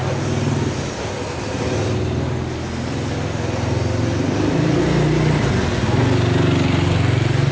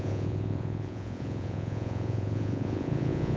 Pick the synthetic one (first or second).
second